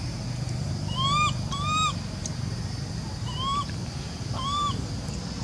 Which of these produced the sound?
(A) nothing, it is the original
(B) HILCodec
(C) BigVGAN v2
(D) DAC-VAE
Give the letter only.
A